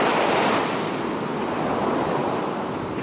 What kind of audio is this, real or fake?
real